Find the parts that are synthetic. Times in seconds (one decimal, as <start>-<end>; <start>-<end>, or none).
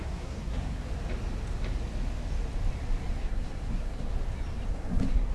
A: 0.0-0.9; 3.2-4.1; 4.7-5.3